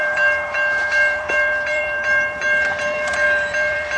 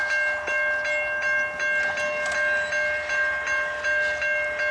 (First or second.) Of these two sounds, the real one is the second